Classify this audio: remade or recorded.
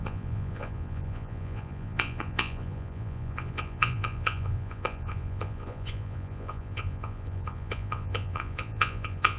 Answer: remade